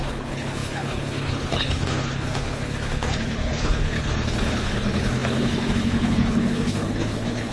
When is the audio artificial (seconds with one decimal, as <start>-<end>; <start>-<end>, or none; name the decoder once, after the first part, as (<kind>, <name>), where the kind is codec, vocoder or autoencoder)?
0.0-7.5 (codec, HILCodec)

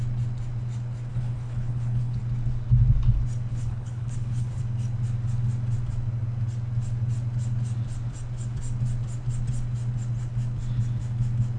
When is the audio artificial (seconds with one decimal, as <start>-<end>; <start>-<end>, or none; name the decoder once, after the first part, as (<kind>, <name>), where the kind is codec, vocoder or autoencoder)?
1.1-2.2 (codec, HILCodec); 3.5-4.6

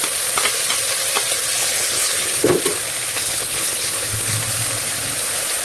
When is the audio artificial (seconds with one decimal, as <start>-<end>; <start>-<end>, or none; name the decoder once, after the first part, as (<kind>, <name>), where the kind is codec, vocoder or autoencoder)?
1.6-2.5 (codec, HILCodec); 3.2-4.3

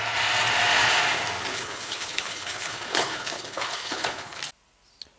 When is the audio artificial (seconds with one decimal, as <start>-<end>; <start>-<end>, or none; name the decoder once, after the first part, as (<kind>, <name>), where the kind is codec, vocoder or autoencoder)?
1.5-4.4 (codec, HILCodec)

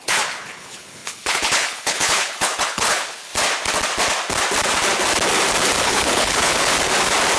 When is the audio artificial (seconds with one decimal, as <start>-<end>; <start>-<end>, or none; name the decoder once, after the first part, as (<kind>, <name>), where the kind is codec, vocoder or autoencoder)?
0.0-3.3 (codec, HILCodec); 5.8-6.7

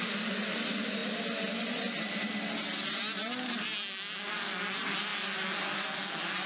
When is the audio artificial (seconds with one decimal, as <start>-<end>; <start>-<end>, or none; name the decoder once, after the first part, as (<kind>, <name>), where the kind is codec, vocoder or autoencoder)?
none